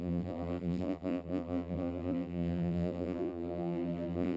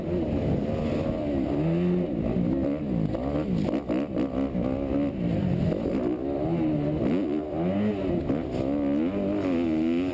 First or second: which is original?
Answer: second